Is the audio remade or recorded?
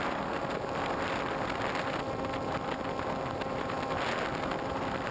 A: recorded